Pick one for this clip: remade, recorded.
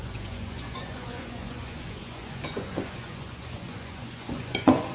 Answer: remade